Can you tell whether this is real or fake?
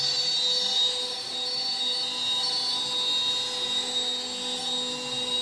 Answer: real